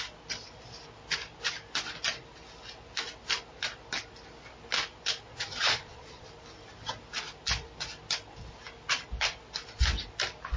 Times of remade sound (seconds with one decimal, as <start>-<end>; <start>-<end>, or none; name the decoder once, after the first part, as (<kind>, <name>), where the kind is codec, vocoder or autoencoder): 5.3-6.3 (vocoder, Vocos)